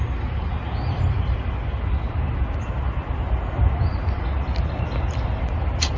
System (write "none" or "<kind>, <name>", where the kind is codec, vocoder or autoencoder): none